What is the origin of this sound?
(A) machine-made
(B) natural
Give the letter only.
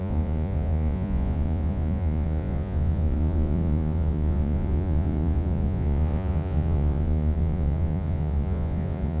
A